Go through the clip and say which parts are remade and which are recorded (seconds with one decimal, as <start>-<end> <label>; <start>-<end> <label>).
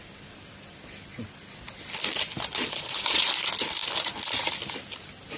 0.0-2.6 recorded; 2.6-3.3 remade; 3.3-5.4 recorded